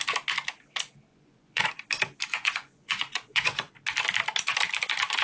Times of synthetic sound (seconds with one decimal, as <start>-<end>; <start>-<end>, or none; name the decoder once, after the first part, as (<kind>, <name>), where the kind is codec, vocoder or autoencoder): 1.1-1.7 (vocoder, Vocos); 2.3-3.7